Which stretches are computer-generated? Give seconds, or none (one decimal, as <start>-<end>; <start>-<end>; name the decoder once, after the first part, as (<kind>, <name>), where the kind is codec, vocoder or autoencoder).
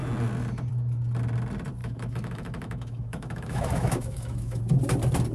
1.8-4.6 (autoencoder, DAC-VAE)